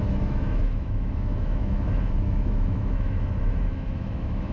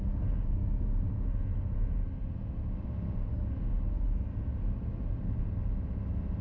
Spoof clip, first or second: first